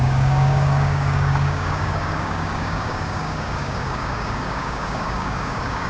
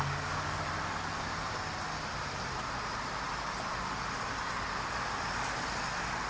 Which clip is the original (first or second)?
second